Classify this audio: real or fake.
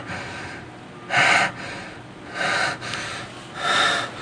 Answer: real